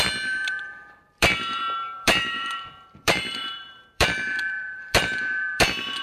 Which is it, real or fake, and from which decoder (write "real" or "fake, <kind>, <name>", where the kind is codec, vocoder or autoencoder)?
fake, vocoder, BigVGAN v2